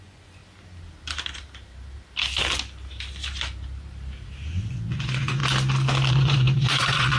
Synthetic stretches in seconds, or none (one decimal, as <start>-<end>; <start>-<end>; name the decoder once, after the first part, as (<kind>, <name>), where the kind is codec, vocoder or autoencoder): 0.0-0.4 (vocoder, Vocos); 4.7-5.4; 6.1-7.2

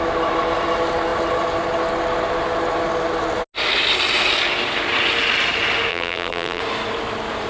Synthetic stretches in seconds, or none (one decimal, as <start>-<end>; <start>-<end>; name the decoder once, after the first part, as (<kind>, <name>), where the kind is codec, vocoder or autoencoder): 5.9-6.6 (vocoder, BigVGAN v2)

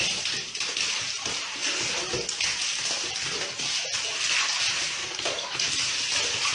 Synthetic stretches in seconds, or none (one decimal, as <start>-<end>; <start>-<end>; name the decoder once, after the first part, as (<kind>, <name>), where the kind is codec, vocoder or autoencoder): 5.0-5.7 (codec, DAC)

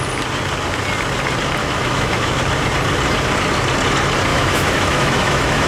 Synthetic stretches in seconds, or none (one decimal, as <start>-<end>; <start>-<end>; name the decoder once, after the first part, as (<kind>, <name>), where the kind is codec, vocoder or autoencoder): 1.6-2.4 (autoencoder, DAC-VAE); 4.3-5.7

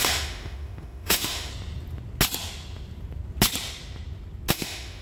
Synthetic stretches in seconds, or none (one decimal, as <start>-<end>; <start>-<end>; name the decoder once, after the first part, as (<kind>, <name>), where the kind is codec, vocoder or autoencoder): 0.0-1.5 (autoencoder, DAC-VAE); 4.5-5.0